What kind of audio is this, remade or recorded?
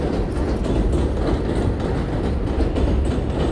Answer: recorded